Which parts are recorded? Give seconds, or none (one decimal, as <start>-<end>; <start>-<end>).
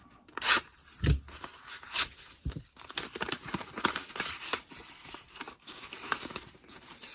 0.8-1.4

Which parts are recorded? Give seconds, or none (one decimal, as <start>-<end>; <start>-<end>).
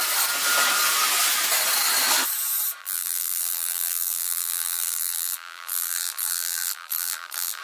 0.0-2.8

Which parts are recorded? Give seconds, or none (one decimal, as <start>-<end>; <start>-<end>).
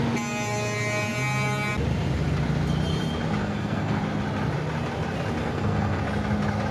0.0-3.4; 4.0-5.4; 6.0-6.7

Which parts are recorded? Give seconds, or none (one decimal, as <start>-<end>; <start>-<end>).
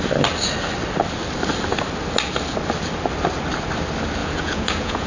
0.0-4.2